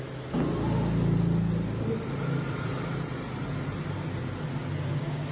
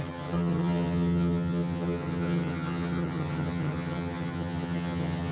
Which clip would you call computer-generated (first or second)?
second